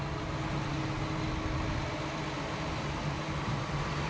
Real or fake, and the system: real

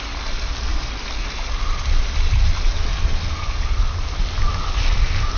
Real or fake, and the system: real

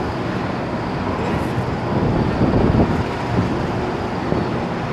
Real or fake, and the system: real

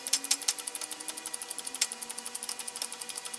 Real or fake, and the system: real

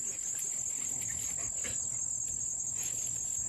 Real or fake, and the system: real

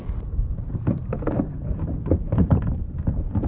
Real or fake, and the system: fake, vocoder, BigVGAN v2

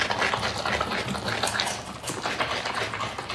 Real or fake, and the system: real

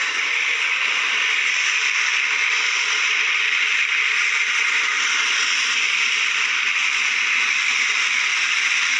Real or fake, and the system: fake, vocoder, BigVGAN v2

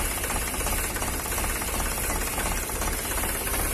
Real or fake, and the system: fake, vocoder, BigVGAN v2